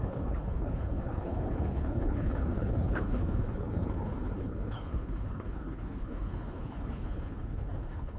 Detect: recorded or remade remade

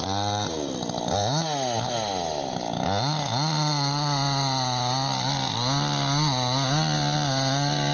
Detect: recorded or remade recorded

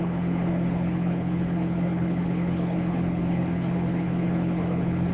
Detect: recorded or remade remade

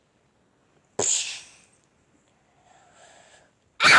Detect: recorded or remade recorded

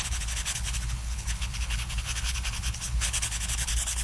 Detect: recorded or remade remade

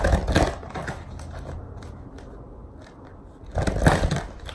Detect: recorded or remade recorded